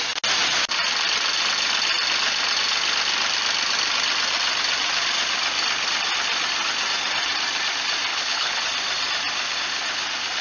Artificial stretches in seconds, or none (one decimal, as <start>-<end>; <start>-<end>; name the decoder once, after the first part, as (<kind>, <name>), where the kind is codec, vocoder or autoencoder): 8.1-8.6 (codec, HILCodec)